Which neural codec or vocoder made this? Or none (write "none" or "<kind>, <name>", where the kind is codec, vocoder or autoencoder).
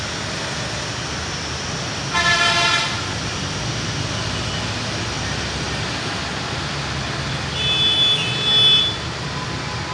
none